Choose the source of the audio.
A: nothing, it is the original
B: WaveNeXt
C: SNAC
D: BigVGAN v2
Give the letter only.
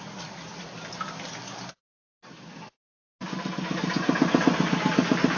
A